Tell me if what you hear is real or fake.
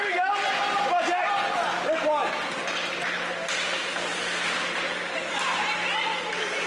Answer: real